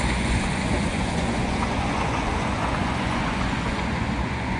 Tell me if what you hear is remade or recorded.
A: remade